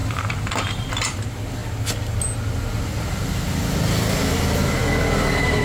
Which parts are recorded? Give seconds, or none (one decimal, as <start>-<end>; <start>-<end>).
0.9-5.6